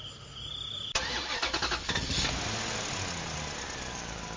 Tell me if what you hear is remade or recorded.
recorded